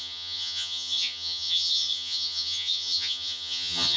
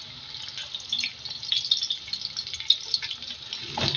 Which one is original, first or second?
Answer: second